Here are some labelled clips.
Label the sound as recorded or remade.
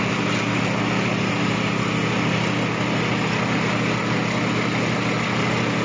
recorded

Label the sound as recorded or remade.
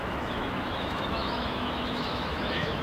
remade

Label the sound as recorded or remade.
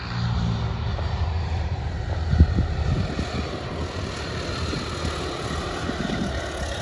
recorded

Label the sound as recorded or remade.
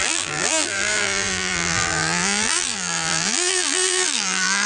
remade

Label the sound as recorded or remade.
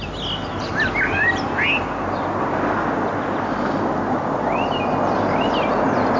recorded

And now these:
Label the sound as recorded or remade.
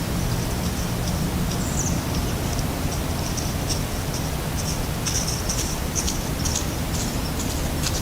recorded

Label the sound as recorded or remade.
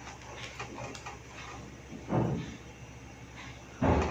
recorded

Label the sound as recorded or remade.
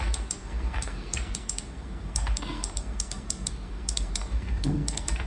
remade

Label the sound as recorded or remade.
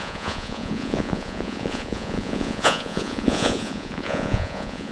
remade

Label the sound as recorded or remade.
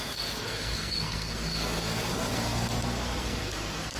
remade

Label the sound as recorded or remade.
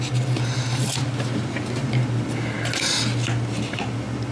recorded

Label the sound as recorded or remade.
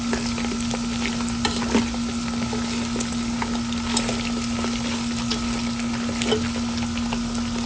recorded